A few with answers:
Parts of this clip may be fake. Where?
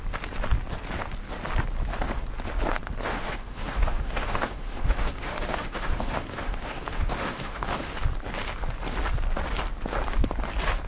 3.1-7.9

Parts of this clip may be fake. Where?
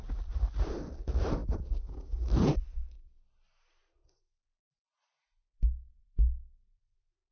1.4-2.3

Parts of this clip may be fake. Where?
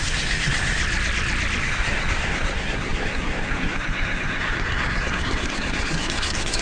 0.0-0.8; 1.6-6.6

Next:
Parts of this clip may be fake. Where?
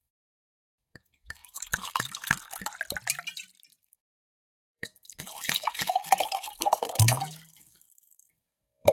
0.0-2.7; 3.8-8.9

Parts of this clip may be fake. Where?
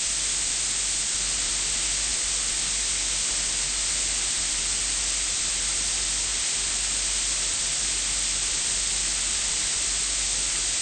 none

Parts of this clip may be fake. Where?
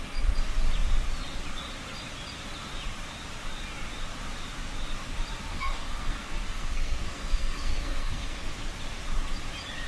5.5-8.5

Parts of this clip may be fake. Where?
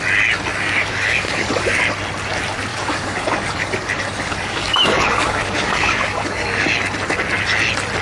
0.5-1.8; 2.7-6.7